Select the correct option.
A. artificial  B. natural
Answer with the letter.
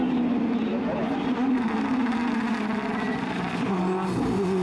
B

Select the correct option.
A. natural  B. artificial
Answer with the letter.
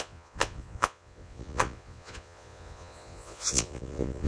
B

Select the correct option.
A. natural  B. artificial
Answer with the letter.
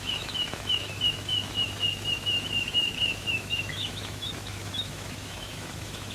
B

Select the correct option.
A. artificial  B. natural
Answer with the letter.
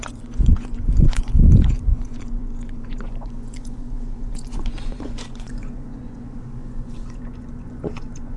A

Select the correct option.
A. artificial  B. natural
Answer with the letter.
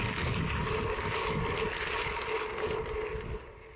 B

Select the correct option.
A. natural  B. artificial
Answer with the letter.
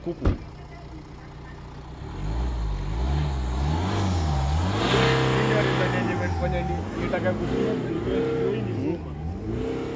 A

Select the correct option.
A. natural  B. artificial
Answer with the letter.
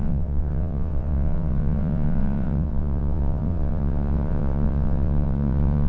B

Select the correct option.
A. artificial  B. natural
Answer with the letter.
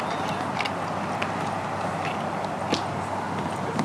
B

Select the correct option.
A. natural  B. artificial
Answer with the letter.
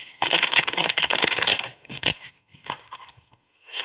B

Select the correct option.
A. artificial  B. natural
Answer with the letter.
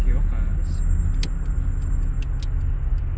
B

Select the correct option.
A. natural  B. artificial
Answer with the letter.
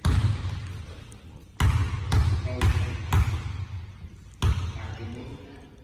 A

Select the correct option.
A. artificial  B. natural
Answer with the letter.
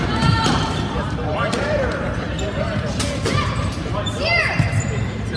A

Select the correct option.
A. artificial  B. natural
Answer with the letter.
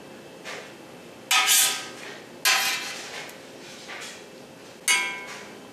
B